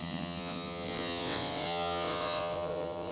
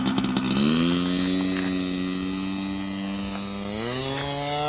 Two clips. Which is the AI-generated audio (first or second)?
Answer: first